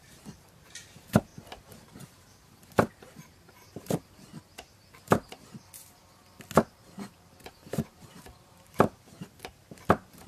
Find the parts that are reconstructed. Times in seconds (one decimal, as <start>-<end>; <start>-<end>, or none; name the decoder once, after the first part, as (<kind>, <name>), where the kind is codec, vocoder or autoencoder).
0.0-4.3 (vocoder, BigVGAN v2); 6.7-10.3

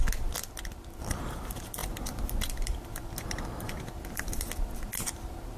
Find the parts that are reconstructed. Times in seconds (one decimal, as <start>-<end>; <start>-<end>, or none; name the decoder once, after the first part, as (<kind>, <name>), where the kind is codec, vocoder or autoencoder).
none

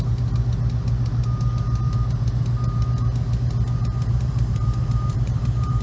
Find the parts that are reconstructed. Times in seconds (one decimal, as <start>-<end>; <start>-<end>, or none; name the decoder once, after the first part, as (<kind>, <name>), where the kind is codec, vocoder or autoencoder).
4.1-5.8 (vocoder, BigVGAN v2)

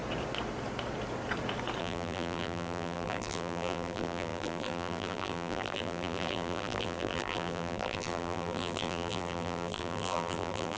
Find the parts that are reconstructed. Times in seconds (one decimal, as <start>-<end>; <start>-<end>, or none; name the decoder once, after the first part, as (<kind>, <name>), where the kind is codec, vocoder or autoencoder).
1.8-10.8 (vocoder, BigVGAN v2)

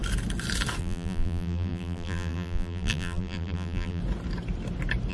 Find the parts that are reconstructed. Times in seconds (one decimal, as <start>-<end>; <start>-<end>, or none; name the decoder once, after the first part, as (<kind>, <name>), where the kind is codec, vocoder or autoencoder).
0.8-4.0 (vocoder, BigVGAN v2)

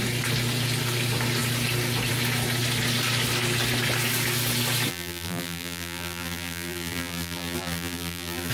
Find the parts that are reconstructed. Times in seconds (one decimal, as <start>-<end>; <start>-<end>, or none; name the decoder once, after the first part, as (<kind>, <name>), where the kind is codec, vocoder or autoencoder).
4.9-8.5 (vocoder, BigVGAN v2)